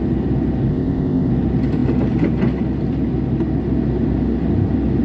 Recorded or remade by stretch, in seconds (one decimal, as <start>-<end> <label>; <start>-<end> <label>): 0.0-0.7 recorded; 0.7-1.3 remade; 1.3-5.0 recorded